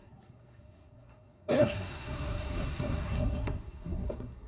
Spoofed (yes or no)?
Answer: yes